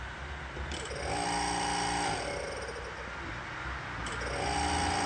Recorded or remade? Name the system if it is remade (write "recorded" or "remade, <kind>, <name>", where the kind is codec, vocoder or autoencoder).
recorded